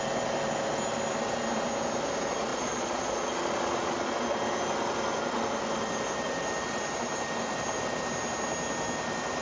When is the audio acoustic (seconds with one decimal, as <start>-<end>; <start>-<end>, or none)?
0.0-2.5; 4.1-9.4